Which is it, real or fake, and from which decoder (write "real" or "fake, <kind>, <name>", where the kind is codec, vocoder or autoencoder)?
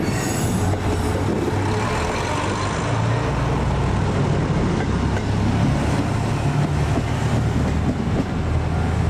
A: real